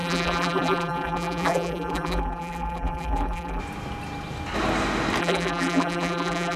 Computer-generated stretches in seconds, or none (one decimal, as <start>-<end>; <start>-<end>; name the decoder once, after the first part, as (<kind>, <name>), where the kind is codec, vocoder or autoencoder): 0.0-3.6 (vocoder, BigVGAN v2); 5.2-6.6